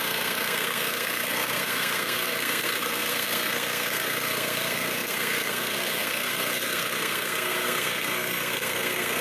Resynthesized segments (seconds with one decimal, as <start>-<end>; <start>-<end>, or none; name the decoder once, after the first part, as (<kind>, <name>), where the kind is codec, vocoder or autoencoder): 0.0-9.2 (codec, SNAC)